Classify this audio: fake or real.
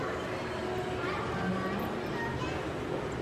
real